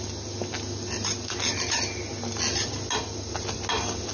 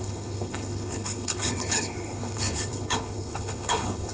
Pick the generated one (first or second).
second